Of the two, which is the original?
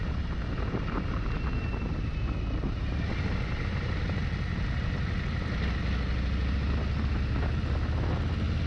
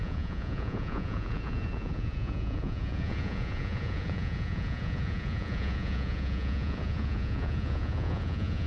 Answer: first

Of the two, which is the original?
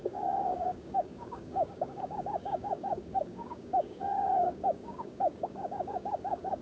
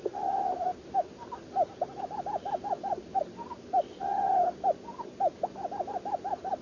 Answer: second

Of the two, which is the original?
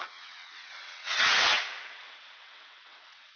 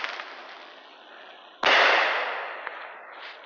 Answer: second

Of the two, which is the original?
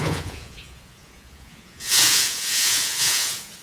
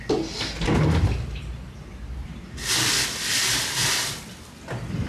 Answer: second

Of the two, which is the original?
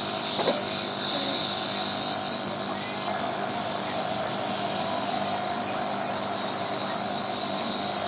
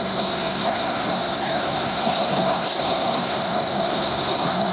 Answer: first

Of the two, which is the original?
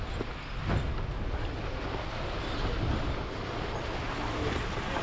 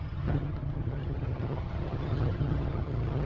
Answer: first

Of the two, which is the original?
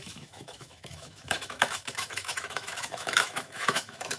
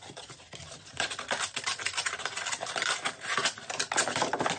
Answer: second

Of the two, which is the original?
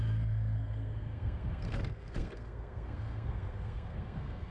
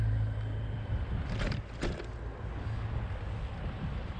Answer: second